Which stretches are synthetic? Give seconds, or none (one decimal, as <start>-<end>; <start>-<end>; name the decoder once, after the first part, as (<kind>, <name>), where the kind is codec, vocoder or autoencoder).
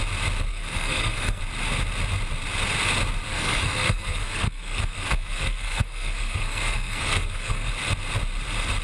0.5-1.4 (codec, SNAC); 3.3-7.7